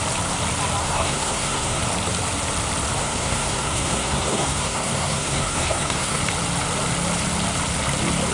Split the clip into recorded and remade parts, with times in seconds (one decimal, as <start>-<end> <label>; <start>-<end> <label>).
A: 0.0-0.8 recorded; 0.8-1.8 remade; 1.8-3.0 recorded; 3.0-6.2 remade; 6.2-8.3 recorded